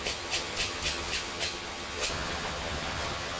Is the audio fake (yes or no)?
yes